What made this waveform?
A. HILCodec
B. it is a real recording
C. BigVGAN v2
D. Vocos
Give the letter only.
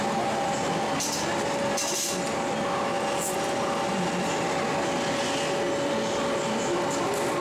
B